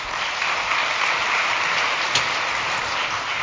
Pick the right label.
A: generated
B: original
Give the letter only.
B